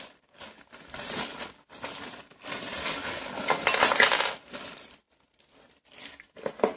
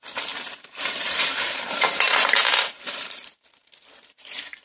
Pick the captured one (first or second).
first